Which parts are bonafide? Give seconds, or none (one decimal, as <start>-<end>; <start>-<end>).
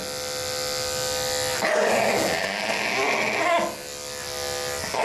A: 0.0-5.0